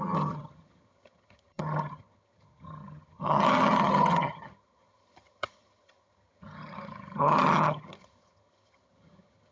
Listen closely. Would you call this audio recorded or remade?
remade